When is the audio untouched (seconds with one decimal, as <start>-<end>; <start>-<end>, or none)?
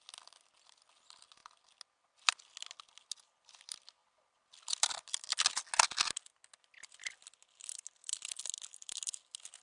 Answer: 0.0-9.6